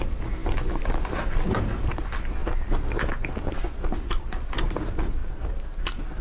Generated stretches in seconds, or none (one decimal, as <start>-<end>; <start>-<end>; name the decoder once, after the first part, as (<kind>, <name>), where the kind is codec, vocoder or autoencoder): 0.0-0.4 (vocoder, BigVGAN v2); 1.0-2.4; 4.6-5.2; 5.8-6.2